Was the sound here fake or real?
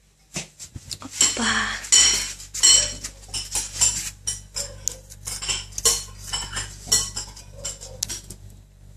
real